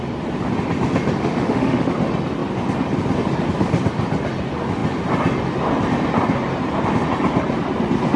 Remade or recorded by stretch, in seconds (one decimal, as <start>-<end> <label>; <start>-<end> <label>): 0.0-1.2 recorded; 1.2-1.9 remade; 1.9-8.2 recorded